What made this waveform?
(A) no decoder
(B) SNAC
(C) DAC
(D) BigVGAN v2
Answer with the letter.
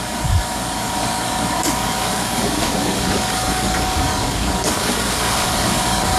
C